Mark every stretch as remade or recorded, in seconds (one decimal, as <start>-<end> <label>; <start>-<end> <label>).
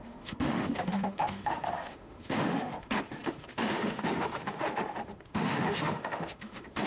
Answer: 0.0-6.9 remade